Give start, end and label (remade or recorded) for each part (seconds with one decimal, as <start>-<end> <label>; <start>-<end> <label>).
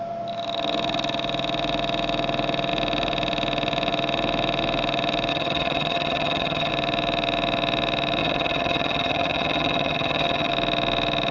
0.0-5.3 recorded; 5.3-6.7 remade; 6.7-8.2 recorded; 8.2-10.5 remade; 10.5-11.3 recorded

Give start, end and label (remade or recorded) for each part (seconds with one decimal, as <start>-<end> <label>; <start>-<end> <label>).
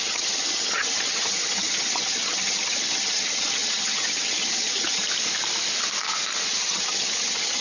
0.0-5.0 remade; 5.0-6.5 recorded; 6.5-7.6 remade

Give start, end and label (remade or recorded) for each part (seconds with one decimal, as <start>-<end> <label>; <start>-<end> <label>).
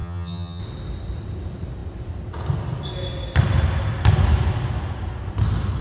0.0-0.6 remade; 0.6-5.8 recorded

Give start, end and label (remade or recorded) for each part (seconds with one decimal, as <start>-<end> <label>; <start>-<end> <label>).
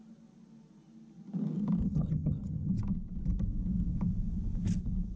0.0-1.8 recorded; 1.8-2.7 remade; 2.7-5.2 recorded